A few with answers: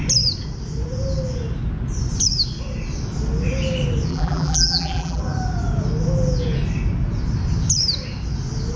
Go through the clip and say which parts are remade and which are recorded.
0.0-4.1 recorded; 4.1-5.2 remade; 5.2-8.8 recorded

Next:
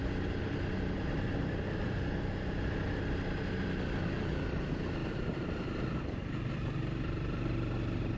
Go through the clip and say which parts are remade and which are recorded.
0.0-5.0 recorded; 5.0-5.7 remade; 5.7-8.2 recorded

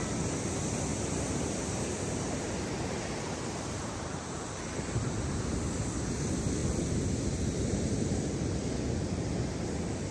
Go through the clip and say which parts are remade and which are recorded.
0.0-0.9 recorded; 0.9-4.6 remade; 4.6-10.1 recorded

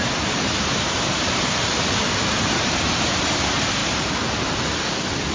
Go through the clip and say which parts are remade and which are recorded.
0.0-1.1 recorded; 1.1-3.3 remade; 3.3-3.8 recorded; 3.8-4.5 remade; 4.5-5.3 recorded

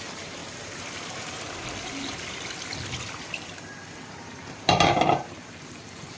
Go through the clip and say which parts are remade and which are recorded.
0.0-0.4 remade; 0.4-4.1 recorded; 4.1-6.2 remade